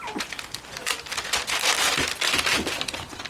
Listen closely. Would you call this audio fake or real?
real